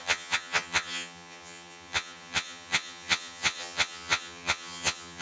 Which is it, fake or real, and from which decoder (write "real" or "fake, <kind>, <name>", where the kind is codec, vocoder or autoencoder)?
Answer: fake, vocoder, HiFi-GAN